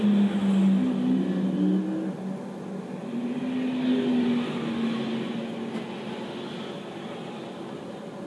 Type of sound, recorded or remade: recorded